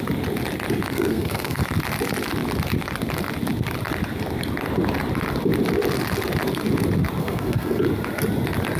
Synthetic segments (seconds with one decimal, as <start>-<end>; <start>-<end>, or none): 0.9-1.6; 7.2-7.8